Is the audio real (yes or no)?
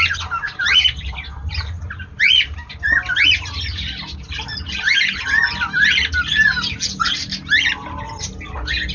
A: yes